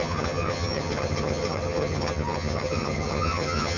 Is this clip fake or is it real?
fake